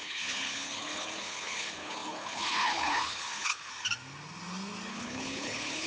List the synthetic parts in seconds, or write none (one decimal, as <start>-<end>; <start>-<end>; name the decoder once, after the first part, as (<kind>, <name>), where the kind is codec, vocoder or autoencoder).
0.0-3.7 (codec, HILCodec); 4.9-5.9